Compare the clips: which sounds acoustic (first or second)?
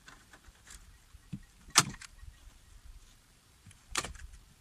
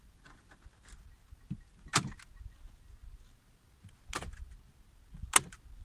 second